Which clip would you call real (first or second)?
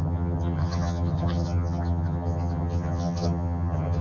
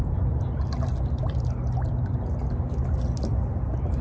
second